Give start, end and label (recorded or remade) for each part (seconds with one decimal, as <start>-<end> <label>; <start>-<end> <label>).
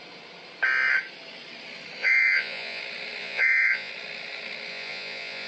0.0-2.0 recorded; 2.0-2.8 remade; 2.8-3.2 recorded; 3.2-3.9 remade; 3.9-4.7 recorded; 4.7-5.5 remade